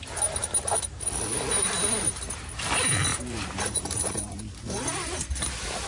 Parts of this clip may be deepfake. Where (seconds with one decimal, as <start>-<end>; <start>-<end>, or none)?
3.1-4.8